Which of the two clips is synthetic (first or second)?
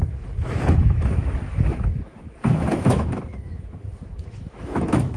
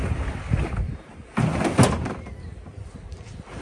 first